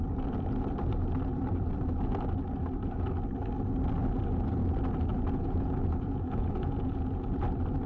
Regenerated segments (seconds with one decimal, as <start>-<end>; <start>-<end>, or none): 5.1-7.3